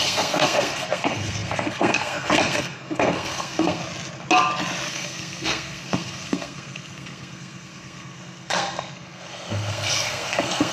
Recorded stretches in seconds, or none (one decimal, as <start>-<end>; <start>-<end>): 3.8-4.9